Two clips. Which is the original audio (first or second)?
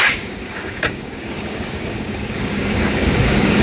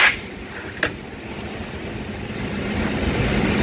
second